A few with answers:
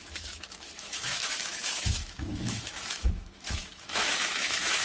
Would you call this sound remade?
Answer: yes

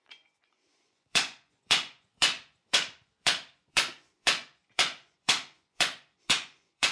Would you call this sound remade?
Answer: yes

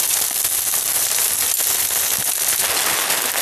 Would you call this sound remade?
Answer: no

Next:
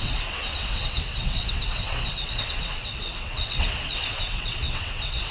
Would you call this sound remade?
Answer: yes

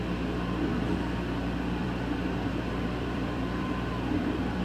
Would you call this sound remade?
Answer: yes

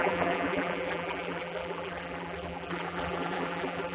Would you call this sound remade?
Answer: yes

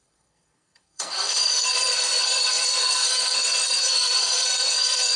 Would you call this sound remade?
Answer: yes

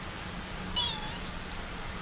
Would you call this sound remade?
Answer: yes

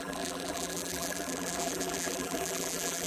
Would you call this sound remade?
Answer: yes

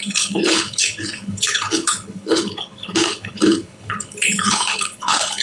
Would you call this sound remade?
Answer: yes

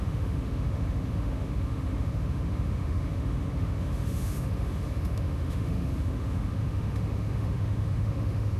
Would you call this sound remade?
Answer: yes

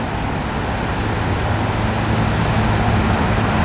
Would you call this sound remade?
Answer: no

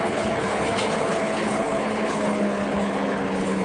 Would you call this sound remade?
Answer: yes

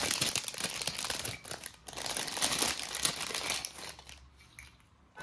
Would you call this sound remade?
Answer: no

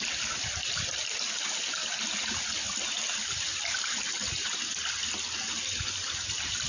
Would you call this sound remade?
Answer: no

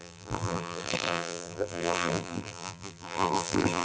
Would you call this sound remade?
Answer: yes